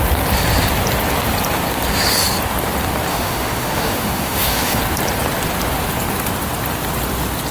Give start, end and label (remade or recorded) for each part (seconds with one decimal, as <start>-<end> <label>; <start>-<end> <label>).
0.0-3.1 recorded; 3.1-4.8 remade; 4.8-7.5 recorded